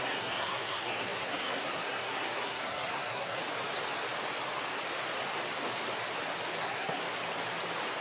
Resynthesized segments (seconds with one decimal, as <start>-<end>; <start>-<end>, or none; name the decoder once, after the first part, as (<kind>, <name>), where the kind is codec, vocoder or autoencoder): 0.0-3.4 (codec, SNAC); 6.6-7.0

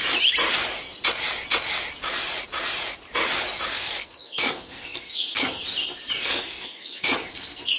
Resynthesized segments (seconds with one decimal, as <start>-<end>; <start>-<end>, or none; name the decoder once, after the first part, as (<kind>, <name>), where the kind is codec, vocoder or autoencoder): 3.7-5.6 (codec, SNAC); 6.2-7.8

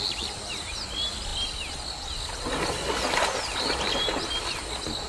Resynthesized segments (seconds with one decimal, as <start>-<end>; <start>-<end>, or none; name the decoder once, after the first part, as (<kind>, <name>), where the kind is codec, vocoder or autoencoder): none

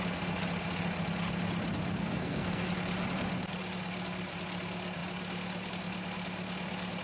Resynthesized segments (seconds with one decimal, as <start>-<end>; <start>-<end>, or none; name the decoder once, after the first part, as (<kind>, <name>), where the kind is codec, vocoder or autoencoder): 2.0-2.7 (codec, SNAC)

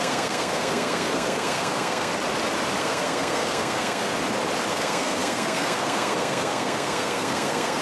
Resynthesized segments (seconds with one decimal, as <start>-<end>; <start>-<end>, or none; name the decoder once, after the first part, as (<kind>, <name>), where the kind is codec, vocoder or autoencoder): 0.0-2.1 (codec, SNAC); 2.8-4.1; 4.7-7.8

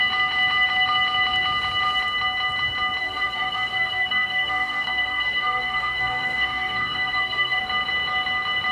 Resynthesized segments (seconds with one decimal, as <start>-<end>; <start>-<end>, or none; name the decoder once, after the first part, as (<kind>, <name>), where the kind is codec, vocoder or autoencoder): 3.0-7.6 (codec, SNAC)

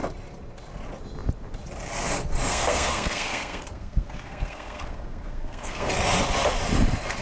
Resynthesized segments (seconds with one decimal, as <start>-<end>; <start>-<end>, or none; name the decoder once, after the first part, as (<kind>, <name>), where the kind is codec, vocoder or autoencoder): 2.5-5.9 (codec, SNAC)

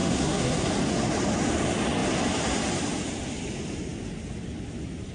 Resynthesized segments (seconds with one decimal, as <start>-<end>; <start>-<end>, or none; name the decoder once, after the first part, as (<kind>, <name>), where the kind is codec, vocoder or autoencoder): 0.0-0.7 (codec, SNAC)